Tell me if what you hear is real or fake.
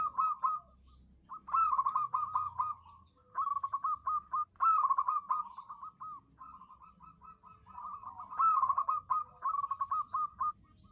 real